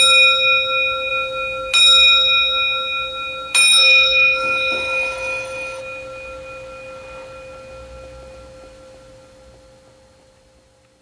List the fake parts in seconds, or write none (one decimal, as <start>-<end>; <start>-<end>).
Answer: 3.6-5.8